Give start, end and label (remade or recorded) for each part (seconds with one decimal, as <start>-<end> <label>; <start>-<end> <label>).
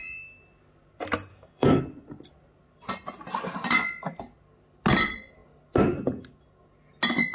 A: 0.0-1.3 recorded; 1.3-1.8 remade; 1.8-7.3 recorded